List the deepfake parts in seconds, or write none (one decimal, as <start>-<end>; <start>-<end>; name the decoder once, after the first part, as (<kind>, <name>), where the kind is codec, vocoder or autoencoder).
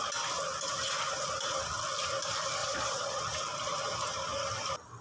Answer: 2.6-3.2 (vocoder, Vocos)